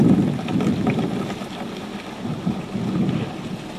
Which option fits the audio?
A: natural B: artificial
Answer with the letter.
A